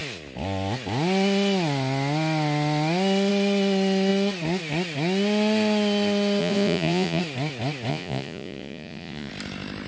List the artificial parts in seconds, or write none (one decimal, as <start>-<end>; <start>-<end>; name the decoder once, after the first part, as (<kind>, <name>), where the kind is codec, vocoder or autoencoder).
6.4-7.2 (vocoder, Vocos); 7.9-9.3